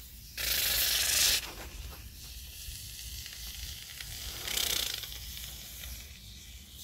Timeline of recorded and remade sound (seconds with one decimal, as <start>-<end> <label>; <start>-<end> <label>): 0.0-1.9 recorded; 1.9-5.1 remade; 5.1-6.8 recorded